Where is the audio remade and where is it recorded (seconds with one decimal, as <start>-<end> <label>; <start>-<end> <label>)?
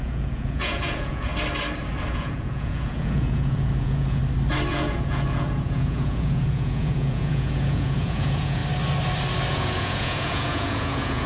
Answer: 0.0-1.3 remade; 1.3-2.1 recorded; 2.1-4.2 remade; 4.2-4.7 recorded; 4.7-8.6 remade; 8.6-9.5 recorded; 9.5-11.3 remade